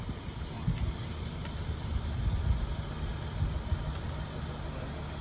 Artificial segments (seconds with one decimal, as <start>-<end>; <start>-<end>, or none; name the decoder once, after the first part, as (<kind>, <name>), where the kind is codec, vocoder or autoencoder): none

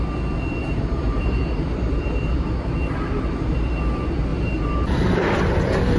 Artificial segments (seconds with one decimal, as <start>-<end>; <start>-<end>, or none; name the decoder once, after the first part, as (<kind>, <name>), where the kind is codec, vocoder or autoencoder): 0.6-3.7 (vocoder, BigVGAN v2); 4.3-5.4

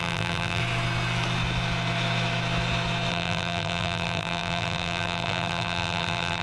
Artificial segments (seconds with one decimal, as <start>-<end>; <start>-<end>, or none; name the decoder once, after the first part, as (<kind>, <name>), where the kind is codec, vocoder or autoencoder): 0.0-0.6 (vocoder, BigVGAN v2); 3.1-6.4

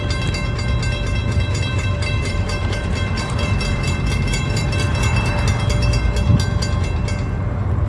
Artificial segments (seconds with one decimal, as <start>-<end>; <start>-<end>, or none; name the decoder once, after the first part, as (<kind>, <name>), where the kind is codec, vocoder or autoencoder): 1.2-5.4 (vocoder, BigVGAN v2)

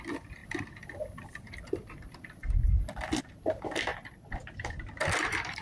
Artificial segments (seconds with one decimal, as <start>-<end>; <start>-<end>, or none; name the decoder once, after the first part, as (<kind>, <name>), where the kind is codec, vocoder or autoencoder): 0.0-2.6 (vocoder, BigVGAN v2); 3.2-3.9; 4.5-5.6